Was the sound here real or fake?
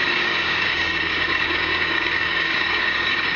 fake